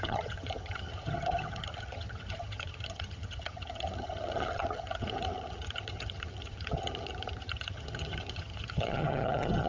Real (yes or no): no